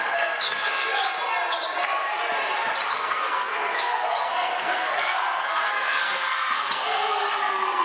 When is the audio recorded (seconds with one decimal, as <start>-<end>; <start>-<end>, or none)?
1.0-2.9